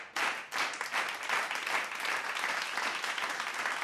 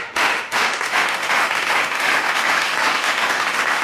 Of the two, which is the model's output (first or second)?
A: second